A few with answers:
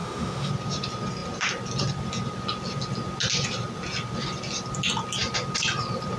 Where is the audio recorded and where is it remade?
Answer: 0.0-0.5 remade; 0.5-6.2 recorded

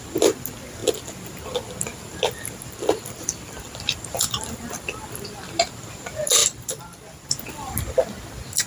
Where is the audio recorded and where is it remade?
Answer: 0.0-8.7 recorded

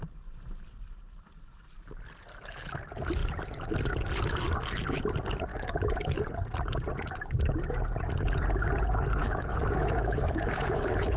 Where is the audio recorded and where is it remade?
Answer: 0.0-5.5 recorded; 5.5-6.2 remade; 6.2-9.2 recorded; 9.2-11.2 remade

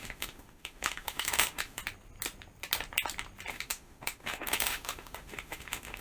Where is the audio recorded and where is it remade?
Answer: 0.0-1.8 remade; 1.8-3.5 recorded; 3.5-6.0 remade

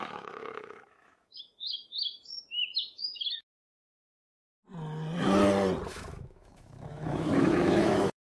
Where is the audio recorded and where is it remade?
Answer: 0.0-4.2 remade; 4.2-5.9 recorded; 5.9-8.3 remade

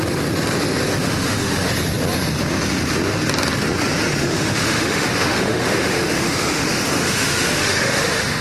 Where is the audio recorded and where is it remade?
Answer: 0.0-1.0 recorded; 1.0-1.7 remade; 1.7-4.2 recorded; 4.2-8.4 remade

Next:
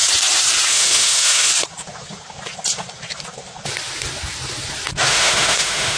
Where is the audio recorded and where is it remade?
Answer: 0.0-0.7 recorded; 0.7-1.5 remade; 1.5-5.1 recorded; 5.1-6.0 remade

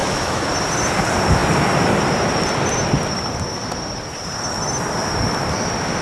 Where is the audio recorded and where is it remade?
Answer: 0.0-0.5 remade; 0.5-6.0 recorded